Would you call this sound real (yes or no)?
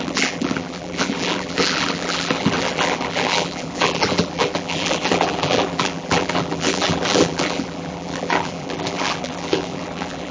no